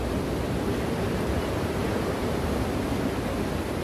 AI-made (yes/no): no